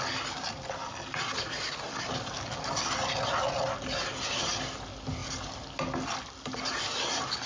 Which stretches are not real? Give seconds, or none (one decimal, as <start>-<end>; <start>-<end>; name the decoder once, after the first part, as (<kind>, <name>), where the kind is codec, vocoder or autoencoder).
none